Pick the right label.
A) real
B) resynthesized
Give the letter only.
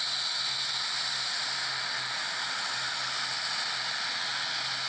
A